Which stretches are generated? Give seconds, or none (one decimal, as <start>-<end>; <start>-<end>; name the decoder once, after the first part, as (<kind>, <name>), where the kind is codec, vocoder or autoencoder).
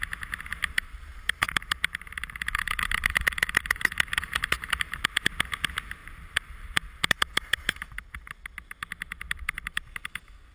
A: 0.5-5.3 (vocoder, BigVGAN v2); 6.0-7.7